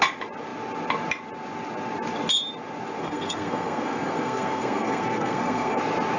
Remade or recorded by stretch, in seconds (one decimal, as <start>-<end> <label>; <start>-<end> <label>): 0.0-3.0 recorded; 3.0-5.8 remade; 5.8-6.2 recorded